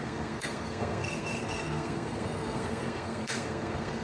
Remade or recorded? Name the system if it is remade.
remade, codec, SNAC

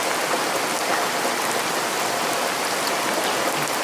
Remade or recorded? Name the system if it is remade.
recorded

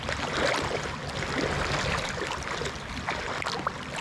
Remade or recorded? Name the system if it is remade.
recorded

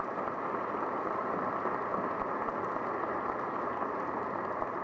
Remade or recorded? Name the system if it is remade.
recorded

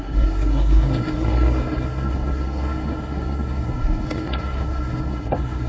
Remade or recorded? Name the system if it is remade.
remade, codec, SNAC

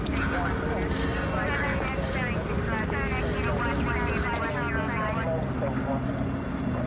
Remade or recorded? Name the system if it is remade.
recorded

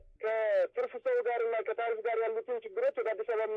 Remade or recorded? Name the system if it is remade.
recorded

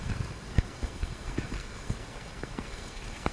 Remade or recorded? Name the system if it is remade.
remade, codec, SNAC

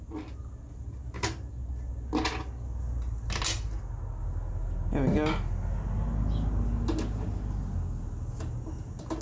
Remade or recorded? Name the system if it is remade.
recorded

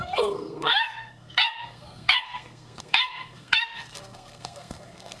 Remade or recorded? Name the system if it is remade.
remade, codec, SNAC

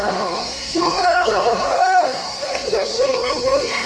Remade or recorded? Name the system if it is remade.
remade, codec, SNAC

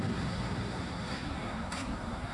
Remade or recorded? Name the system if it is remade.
remade, codec, SNAC